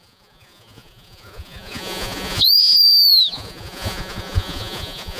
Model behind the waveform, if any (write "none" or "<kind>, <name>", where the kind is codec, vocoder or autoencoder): vocoder, Vocos